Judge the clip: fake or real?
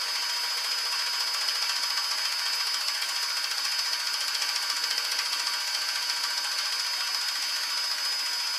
real